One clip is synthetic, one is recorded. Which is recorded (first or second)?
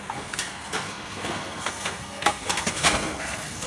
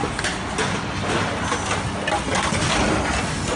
second